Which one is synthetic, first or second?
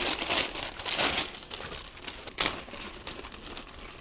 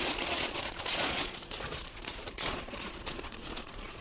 second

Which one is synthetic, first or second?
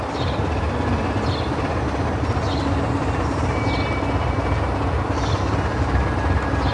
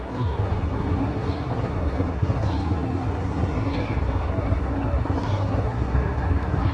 second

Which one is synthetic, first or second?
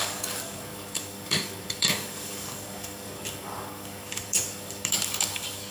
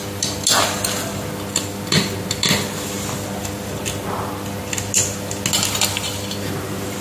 first